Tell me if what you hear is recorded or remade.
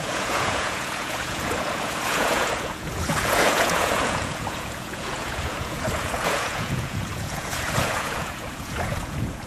remade